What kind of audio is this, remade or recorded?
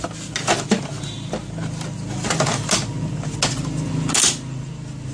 recorded